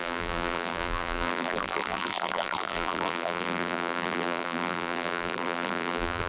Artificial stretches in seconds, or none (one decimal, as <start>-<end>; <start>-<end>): 0.0-6.3